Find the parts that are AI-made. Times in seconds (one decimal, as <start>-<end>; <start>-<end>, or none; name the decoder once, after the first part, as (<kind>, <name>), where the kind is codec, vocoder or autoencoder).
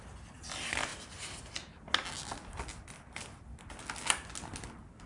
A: none